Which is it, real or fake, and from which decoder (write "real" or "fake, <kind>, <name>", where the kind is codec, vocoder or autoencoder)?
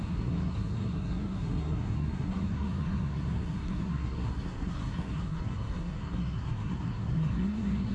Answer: fake, codec, SNAC